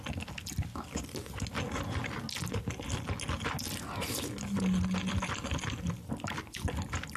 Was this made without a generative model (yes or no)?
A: yes